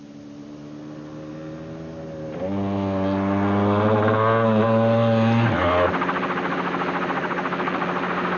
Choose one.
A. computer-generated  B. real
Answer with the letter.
B